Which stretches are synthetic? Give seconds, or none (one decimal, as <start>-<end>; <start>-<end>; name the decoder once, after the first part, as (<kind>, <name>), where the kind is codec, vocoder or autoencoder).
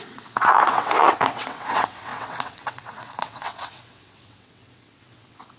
0.0-5.6 (vocoder, WaveNeXt)